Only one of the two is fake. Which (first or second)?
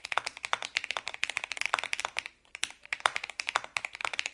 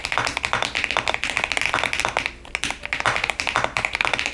first